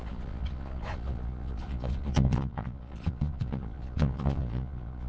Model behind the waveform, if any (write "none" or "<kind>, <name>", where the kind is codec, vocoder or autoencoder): vocoder, Vocos